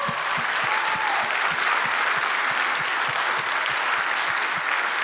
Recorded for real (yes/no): yes